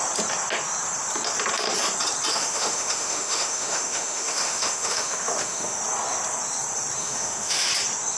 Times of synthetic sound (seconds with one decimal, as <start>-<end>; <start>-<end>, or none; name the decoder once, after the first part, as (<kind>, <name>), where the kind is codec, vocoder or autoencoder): 2.3-5.8 (autoencoder, DAC-VAE); 7.0-7.7